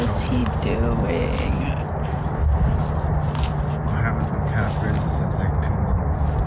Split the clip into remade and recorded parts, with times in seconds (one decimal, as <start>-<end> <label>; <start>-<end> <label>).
0.0-4.1 recorded; 4.1-6.5 remade